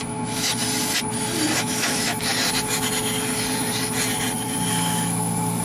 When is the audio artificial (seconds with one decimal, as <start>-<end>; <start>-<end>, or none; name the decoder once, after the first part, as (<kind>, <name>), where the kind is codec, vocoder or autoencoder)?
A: 0.0-0.5 (autoencoder, DAC-VAE); 1.6-2.3; 4.7-5.6